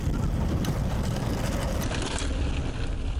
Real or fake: real